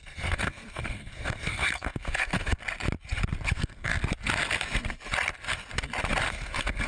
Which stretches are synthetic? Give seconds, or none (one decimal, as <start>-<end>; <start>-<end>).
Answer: 0.0-2.6; 3.5-3.9; 6.3-6.9